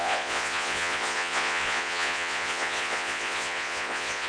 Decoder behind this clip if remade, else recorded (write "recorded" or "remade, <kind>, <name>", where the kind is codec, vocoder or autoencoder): remade, vocoder, Vocos